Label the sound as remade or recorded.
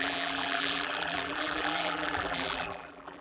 remade